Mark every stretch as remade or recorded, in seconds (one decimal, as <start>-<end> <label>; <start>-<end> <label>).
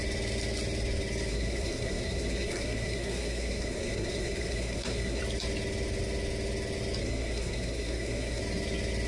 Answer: 0.0-1.3 recorded; 1.3-5.2 remade; 5.2-7.0 recorded; 7.0-8.4 remade; 8.4-9.1 recorded